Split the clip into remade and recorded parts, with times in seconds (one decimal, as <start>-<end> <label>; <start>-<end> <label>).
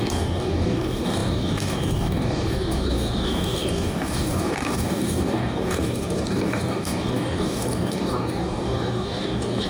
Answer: 0.0-9.7 remade